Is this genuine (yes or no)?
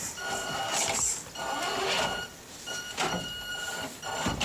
no